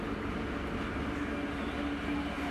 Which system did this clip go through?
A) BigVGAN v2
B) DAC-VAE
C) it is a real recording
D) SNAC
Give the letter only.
C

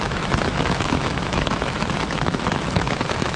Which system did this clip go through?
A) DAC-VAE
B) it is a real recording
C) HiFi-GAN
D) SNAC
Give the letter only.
A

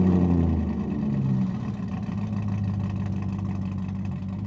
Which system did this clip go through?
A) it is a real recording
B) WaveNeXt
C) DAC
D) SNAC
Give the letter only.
A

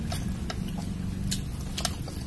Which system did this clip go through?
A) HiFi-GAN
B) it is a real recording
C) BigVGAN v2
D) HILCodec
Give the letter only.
B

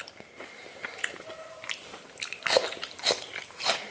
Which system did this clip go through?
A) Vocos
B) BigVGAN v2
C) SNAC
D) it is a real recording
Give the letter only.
D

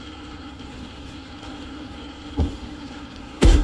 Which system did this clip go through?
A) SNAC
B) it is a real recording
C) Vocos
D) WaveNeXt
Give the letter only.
A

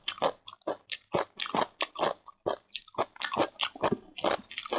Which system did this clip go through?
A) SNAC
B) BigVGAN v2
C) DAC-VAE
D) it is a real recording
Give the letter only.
D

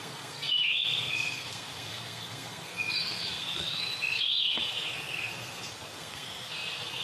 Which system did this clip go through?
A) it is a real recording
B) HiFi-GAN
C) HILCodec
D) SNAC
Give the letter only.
D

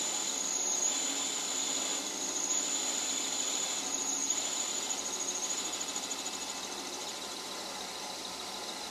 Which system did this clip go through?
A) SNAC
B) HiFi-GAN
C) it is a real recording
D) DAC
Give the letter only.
C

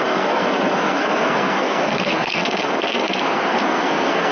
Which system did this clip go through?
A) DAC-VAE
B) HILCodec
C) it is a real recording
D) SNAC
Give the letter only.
D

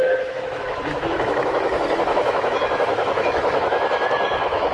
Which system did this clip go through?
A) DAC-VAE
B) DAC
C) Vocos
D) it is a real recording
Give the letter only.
A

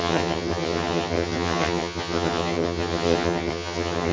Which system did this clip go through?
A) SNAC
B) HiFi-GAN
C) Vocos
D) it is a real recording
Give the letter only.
B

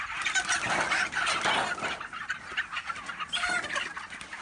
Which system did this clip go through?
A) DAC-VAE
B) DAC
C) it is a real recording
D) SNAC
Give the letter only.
C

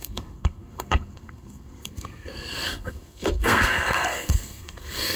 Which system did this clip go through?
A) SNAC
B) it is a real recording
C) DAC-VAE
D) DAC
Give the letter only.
A